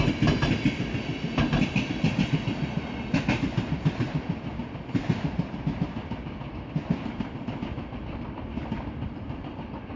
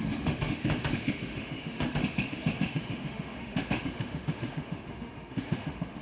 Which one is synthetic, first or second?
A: second